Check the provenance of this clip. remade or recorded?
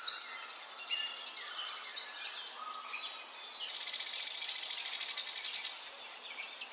recorded